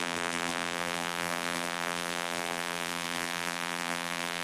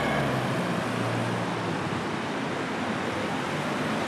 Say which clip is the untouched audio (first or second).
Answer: second